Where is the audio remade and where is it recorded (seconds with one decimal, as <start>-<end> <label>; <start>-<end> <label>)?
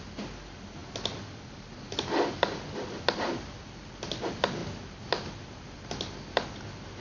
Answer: 0.0-0.8 recorded; 0.8-2.4 remade; 2.4-7.0 recorded